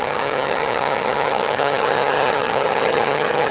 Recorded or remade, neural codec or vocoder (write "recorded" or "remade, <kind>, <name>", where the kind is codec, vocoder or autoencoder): remade, vocoder, HiFi-GAN